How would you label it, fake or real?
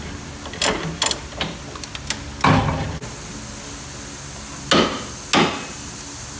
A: real